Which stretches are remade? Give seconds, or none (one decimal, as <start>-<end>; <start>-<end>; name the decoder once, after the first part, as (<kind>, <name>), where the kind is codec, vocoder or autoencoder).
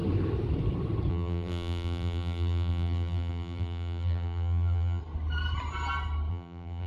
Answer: 1.1-5.0 (vocoder, BigVGAN v2); 6.3-6.9